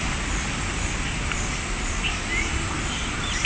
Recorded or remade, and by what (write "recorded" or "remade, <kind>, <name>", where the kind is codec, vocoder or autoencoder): recorded